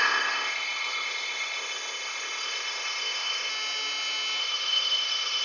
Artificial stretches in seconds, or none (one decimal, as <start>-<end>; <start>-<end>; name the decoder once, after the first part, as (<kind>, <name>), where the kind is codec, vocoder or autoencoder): 0.0-3.5 (codec, ZipCodec); 4.4-5.4